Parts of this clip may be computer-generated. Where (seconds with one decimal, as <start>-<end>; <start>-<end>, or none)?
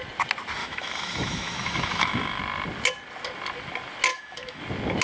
0.6-2.4; 4.1-4.6